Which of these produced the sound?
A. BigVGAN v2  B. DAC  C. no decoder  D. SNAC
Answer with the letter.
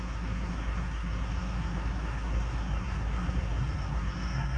D